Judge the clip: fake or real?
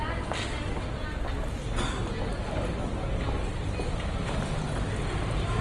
real